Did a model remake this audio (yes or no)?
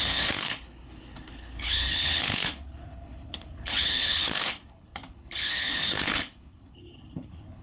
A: yes